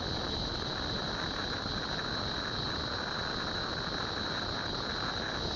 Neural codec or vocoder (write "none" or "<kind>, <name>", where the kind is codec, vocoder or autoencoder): none